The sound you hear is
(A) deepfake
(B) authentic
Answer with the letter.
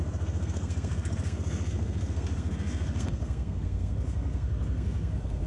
A